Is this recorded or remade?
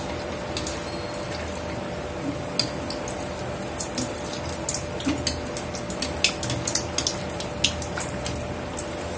recorded